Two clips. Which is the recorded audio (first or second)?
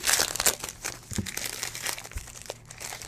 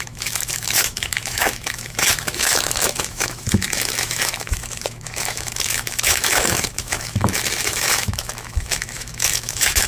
first